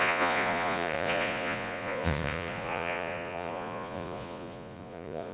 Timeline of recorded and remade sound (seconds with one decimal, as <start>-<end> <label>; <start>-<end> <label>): 0.0-5.3 remade

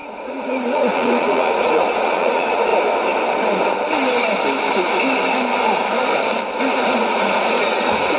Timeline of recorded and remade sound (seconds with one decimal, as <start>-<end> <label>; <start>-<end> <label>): 0.0-2.7 remade; 2.7-6.7 recorded; 6.7-8.2 remade

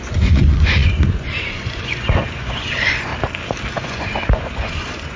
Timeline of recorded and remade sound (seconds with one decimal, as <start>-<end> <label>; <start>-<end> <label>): 0.0-3.1 remade; 3.1-3.7 recorded; 3.7-5.2 remade

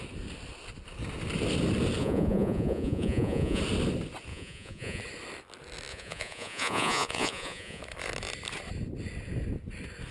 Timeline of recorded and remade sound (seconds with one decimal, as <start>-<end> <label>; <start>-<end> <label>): 0.0-2.0 recorded; 2.0-3.6 remade; 3.6-4.3 recorded; 4.3-5.0 remade; 5.0-5.9 recorded; 5.9-7.8 remade; 7.8-10.1 recorded